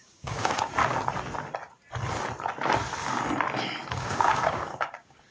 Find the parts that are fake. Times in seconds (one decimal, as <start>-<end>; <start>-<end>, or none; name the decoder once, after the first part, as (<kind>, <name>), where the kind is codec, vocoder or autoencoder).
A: 0.0-0.7 (codec, DAC); 3.9-5.3